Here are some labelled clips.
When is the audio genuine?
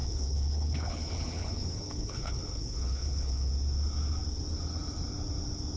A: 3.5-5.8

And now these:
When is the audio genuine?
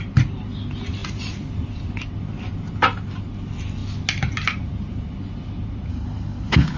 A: 0.0-5.9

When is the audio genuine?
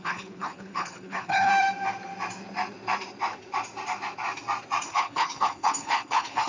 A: 1.5-4.9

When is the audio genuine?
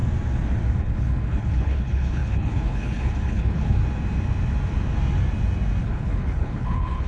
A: 0.0-0.8; 3.8-5.8